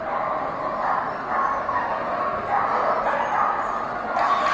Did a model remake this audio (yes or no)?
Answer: no